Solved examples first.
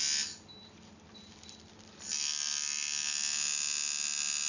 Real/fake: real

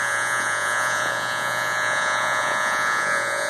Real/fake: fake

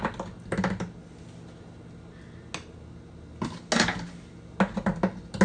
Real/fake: real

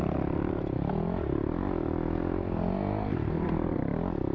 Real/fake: real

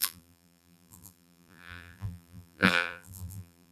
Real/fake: fake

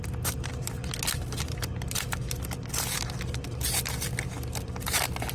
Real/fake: real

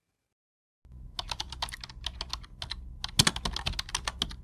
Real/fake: real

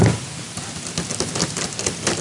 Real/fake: real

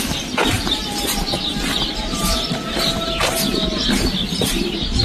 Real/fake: real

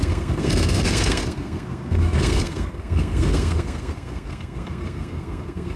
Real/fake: fake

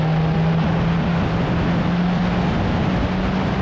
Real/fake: real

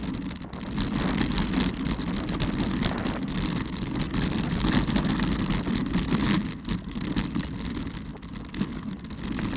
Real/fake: real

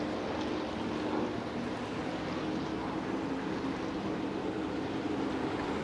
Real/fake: real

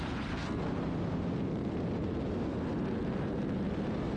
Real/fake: real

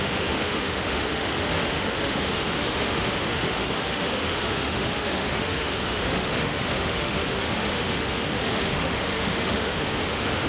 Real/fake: fake